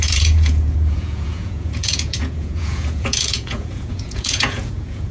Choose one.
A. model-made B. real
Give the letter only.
A